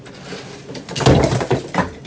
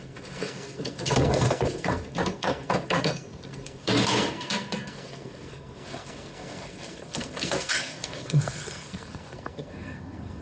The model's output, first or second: second